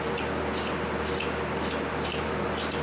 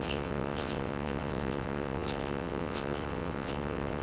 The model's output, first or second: second